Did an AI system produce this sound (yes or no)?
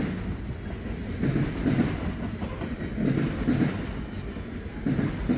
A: no